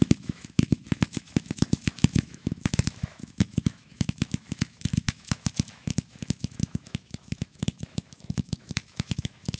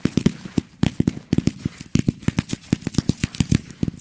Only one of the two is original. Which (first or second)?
second